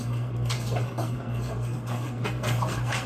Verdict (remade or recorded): remade